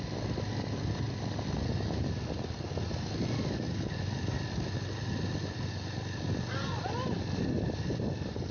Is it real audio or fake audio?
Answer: real